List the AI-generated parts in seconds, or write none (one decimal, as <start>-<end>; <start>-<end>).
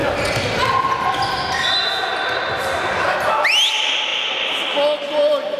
none